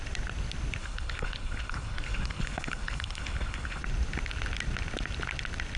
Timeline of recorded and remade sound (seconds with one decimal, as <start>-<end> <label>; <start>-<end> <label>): 0.0-0.8 recorded; 0.8-3.8 remade; 3.8-5.8 recorded